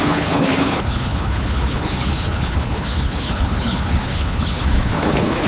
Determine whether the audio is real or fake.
fake